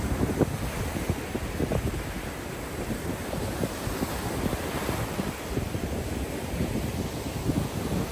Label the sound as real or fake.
real